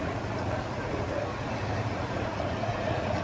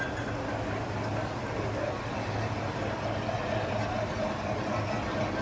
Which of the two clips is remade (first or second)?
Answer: first